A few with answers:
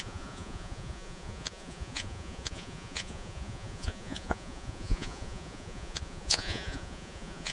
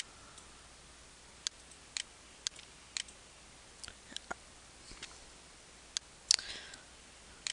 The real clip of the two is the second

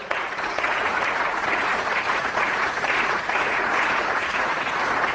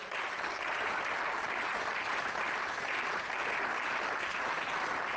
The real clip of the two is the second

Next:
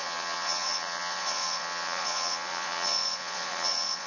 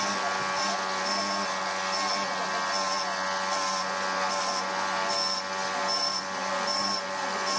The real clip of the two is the second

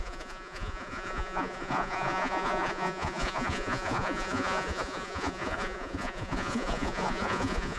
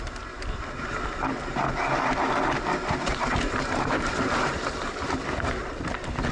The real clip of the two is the second